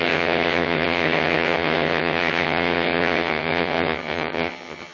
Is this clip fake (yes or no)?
yes